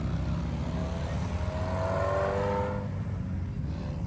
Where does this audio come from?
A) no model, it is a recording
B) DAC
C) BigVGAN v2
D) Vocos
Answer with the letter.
A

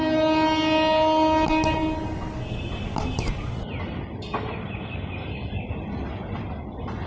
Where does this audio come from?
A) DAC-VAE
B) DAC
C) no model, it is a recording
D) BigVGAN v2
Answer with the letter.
C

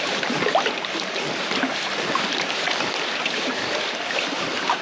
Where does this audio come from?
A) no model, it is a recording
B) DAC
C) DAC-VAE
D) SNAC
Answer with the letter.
A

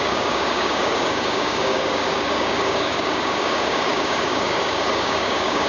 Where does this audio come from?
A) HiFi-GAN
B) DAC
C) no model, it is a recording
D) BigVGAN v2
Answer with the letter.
B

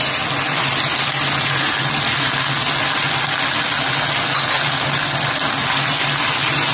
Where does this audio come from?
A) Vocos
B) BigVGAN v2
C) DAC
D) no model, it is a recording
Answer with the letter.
D